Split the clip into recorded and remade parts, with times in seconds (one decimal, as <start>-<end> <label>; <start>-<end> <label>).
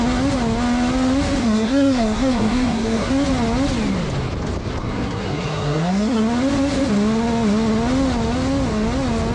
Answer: 0.0-1.4 recorded; 1.4-3.1 remade; 3.1-4.8 recorded; 4.8-6.2 remade; 6.2-9.3 recorded